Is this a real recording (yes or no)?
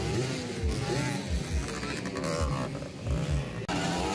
yes